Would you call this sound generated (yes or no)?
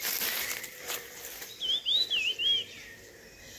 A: no